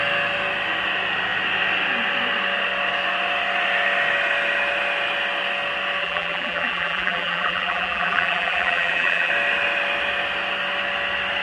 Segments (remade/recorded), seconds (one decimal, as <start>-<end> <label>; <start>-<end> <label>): 0.0-6.0 recorded; 6.0-9.3 remade; 9.3-11.4 recorded